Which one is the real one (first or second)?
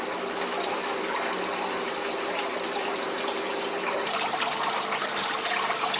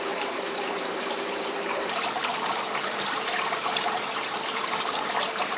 first